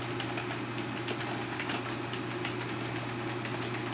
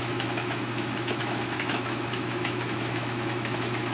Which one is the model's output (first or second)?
second